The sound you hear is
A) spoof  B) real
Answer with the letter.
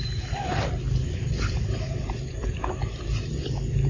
A